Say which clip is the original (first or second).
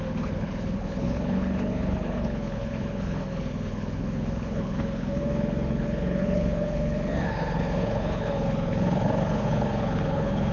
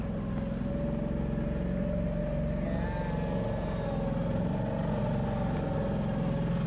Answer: second